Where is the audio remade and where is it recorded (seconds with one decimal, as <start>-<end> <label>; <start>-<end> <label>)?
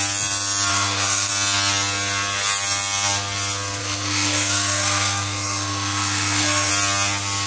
0.0-0.7 recorded; 0.7-1.3 remade; 1.3-3.8 recorded; 3.8-6.7 remade; 6.7-7.5 recorded